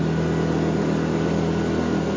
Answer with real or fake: real